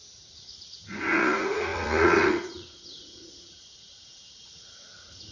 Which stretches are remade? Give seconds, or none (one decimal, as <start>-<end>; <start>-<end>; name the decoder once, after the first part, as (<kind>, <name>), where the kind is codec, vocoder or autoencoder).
0.0-5.3 (vocoder, Vocos)